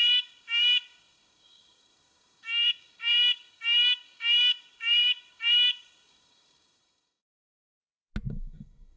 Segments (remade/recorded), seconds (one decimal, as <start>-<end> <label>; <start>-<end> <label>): 0.0-7.8 remade; 7.8-8.3 recorded; 8.3-9.0 remade